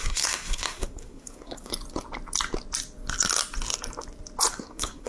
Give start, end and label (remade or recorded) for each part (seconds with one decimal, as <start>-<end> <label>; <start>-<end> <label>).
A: 0.0-1.7 remade; 1.7-4.5 recorded; 4.5-5.1 remade